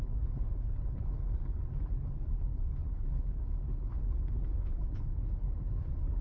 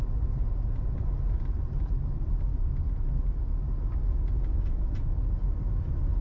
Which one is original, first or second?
second